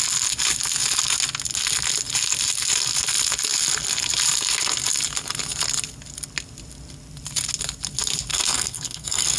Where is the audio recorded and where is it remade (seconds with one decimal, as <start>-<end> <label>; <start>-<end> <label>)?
0.0-8.3 recorded; 8.3-9.4 remade

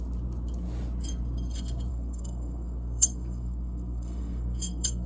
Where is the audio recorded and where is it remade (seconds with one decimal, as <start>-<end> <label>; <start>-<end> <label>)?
0.0-1.9 recorded; 1.9-5.1 remade

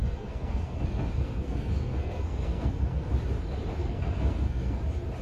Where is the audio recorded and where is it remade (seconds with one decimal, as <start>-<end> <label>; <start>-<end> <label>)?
0.0-3.1 remade; 3.1-3.8 recorded; 3.8-4.8 remade; 4.8-5.2 recorded

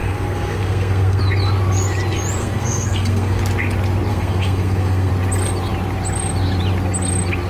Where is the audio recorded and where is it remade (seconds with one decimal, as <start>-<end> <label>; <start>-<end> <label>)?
0.0-1.2 remade; 1.2-2.4 recorded; 2.4-3.4 remade; 3.4-4.1 recorded; 4.1-5.1 remade; 5.1-7.5 recorded